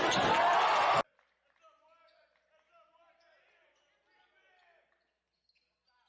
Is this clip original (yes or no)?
yes